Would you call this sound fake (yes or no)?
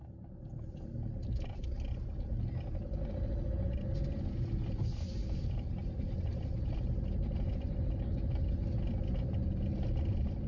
no